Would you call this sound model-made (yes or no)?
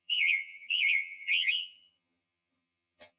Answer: yes